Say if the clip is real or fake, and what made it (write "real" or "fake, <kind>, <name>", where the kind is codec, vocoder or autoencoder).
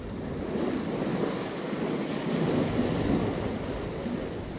real